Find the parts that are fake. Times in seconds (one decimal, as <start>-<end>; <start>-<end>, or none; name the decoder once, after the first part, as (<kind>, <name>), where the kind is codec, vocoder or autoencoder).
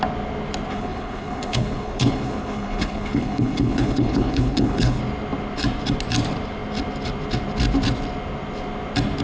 0.7-5.0 (codec, HILCodec)